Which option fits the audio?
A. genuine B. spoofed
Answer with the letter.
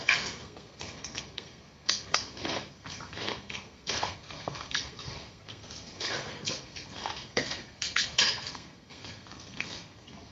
B